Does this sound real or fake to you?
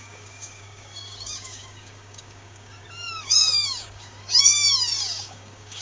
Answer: fake